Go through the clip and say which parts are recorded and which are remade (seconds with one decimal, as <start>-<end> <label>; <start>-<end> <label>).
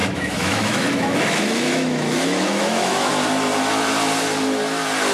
0.0-3.1 remade; 3.1-5.1 recorded